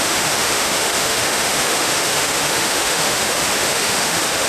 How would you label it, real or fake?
fake